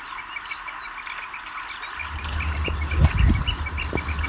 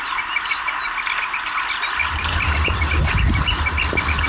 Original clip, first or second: first